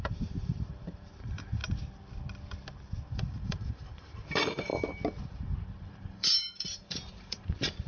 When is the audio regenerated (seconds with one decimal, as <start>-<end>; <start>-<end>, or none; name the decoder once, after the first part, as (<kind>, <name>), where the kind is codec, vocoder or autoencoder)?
0.0-1.6 (vocoder, BigVGAN v2); 3.1-4.7; 5.2-7.9